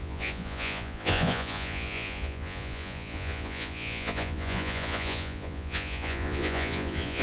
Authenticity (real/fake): fake